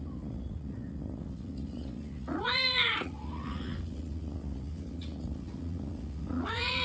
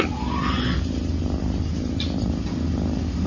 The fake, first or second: first